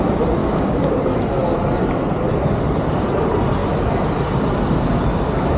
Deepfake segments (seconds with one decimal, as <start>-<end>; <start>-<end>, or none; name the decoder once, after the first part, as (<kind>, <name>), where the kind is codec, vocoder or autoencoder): 0.4-1.0 (codec, DAC)